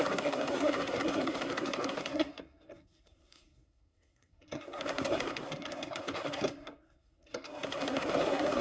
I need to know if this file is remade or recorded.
remade